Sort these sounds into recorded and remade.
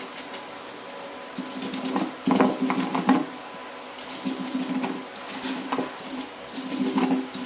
recorded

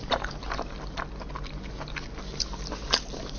recorded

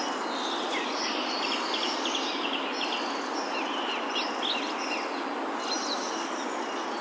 recorded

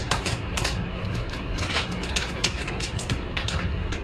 remade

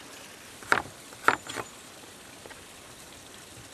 recorded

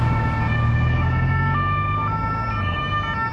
recorded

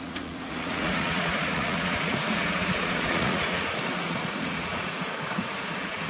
remade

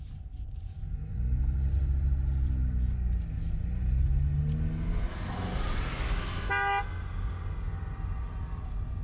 recorded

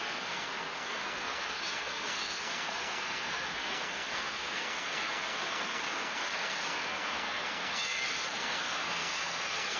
remade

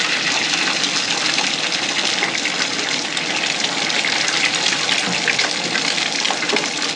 recorded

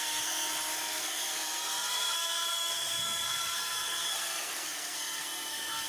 remade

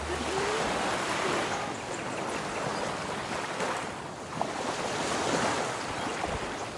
recorded